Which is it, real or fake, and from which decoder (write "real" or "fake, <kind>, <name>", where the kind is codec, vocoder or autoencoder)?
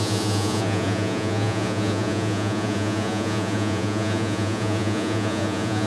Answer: fake, vocoder, Vocos